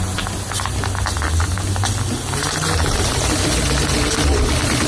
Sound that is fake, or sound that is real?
real